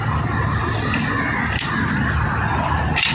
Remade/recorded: recorded